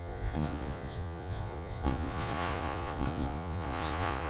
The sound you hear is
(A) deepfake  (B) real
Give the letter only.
A